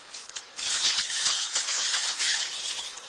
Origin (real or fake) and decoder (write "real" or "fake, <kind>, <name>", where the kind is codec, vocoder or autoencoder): fake, codec, HILCodec